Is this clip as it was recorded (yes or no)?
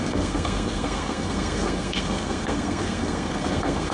no